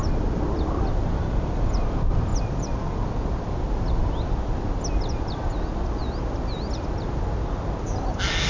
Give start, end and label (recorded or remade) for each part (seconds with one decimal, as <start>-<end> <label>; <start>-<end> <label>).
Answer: 0.0-8.5 recorded